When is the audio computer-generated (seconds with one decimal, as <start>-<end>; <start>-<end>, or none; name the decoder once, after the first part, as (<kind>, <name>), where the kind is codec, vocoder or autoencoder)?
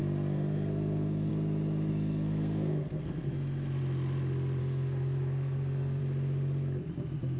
0.0-1.3 (codec, SNAC); 1.9-3.3; 4.6-6.0